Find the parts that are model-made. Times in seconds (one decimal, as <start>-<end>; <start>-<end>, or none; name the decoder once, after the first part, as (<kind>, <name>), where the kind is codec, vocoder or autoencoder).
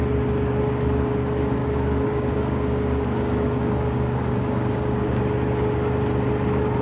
1.6-5.2 (codec, DAC)